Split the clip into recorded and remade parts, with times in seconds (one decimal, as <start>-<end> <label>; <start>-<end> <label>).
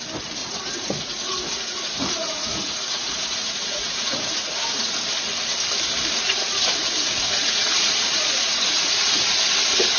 0.0-0.4 recorded; 0.4-4.9 remade; 4.9-6.2 recorded; 6.2-9.3 remade; 9.3-10.0 recorded